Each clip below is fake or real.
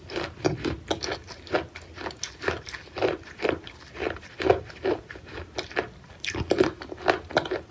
real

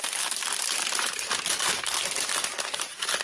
real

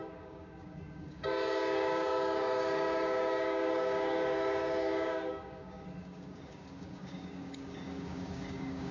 fake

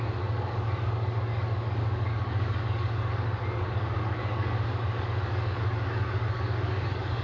fake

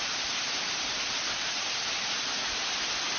real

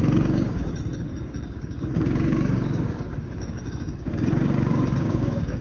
fake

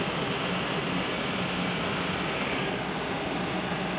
real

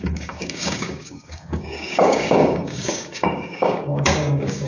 fake